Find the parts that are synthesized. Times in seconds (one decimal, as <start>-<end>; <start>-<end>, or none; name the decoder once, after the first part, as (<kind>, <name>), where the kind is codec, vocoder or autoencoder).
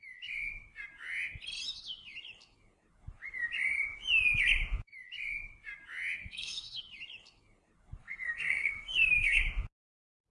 6.2-6.8 (codec, SNAC); 8.0-9.4